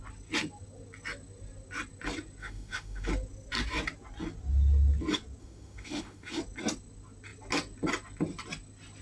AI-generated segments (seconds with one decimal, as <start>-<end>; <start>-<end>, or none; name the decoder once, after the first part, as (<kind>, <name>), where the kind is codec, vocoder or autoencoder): 2.4-3.1 (autoencoder, DAC-VAE); 5.4-6.4